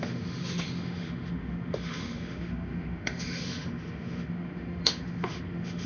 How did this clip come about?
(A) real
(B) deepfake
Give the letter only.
B